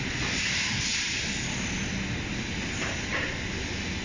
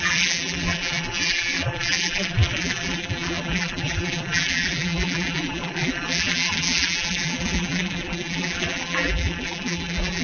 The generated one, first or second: second